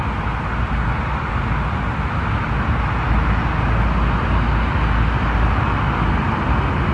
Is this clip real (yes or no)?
yes